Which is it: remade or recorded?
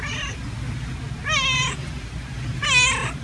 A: recorded